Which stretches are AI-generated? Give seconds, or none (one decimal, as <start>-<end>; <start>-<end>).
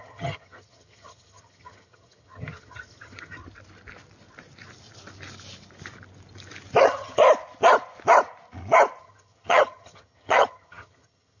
0.0-3.4; 6.8-7.2; 9.0-11.4